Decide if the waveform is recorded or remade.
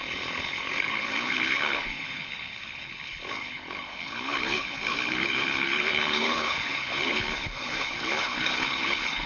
remade